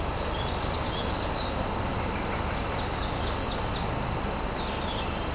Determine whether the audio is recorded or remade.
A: recorded